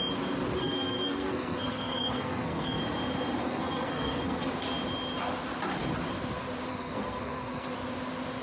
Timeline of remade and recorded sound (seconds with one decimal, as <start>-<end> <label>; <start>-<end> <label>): 0.0-0.6 recorded; 0.6-2.8 remade; 2.8-3.4 recorded; 3.4-4.4 remade; 4.4-6.7 recorded; 6.7-7.7 remade; 7.7-8.4 recorded